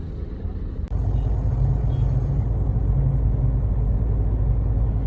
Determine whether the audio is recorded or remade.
recorded